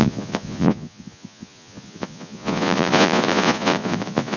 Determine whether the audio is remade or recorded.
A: remade